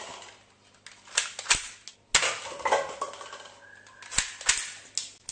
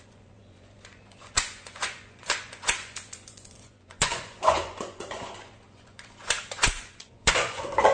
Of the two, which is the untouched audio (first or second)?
first